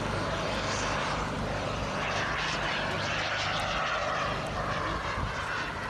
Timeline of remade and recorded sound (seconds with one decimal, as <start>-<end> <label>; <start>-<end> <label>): 0.0-4.0 recorded; 4.0-4.8 remade; 4.8-5.9 recorded